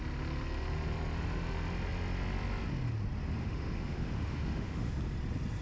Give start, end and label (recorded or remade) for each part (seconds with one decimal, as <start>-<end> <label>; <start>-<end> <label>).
0.0-3.4 recorded; 3.4-4.9 remade; 4.9-5.6 recorded